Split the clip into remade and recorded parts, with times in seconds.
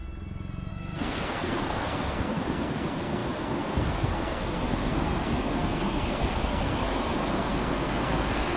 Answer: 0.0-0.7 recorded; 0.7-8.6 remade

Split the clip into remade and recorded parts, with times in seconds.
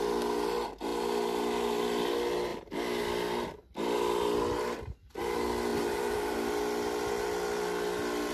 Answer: 0.0-5.7 recorded; 5.7-6.5 remade; 6.5-8.3 recorded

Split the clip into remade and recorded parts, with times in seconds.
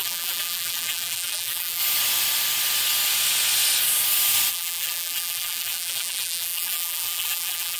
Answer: 0.0-1.8 remade; 1.8-4.5 recorded; 4.5-7.8 remade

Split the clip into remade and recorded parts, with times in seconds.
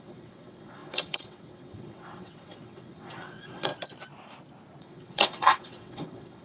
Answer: 0.0-3.7 remade; 3.7-4.8 recorded; 4.8-6.4 remade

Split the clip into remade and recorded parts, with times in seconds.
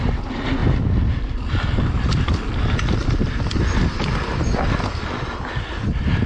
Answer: 0.0-6.3 recorded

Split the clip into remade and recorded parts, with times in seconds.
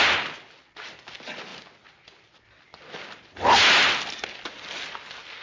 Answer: 0.0-5.4 recorded